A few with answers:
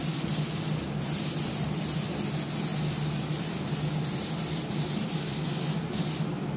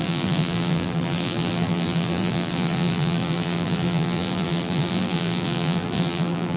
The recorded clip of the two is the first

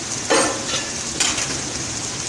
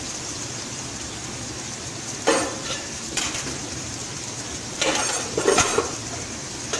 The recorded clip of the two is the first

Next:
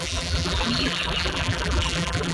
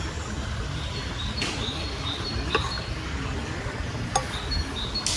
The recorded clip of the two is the second